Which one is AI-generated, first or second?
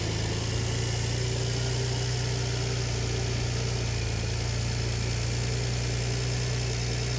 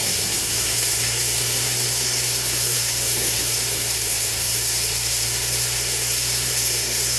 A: second